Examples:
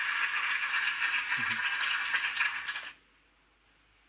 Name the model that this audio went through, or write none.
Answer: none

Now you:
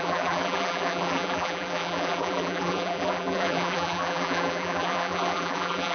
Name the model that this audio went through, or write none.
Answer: vocoder, BigVGAN v2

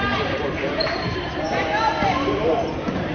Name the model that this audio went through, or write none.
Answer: vocoder, BigVGAN v2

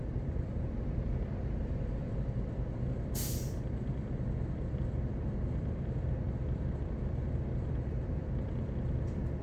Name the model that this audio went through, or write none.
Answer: vocoder, BigVGAN v2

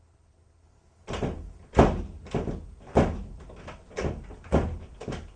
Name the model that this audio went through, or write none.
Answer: none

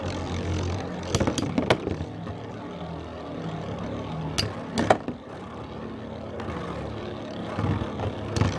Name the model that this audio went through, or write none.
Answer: none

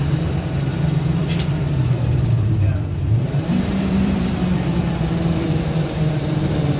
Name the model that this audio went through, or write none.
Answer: vocoder, BigVGAN v2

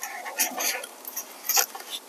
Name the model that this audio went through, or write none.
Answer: none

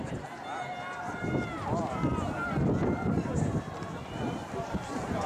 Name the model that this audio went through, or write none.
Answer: none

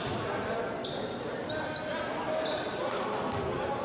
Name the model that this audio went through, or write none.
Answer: none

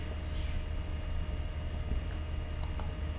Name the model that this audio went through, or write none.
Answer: none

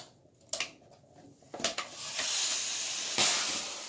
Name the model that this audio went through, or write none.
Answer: none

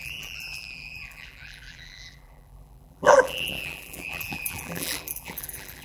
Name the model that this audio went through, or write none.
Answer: vocoder, BigVGAN v2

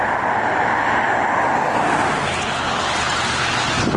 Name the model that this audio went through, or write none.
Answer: none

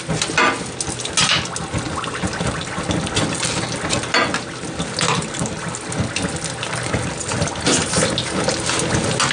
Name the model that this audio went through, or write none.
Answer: none